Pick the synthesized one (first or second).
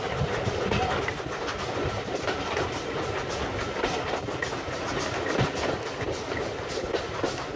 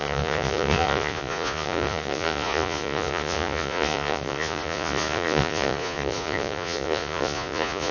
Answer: second